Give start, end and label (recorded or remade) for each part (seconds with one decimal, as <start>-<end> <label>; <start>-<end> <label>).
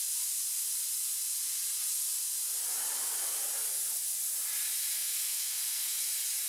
0.0-4.9 recorded; 4.9-6.0 remade; 6.0-6.5 recorded